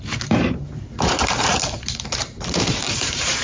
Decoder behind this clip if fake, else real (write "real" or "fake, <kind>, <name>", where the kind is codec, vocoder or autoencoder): fake, vocoder, BigVGAN v2